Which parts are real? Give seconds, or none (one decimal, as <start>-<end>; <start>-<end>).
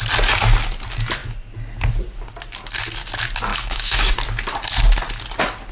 0.0-3.5; 4.1-5.7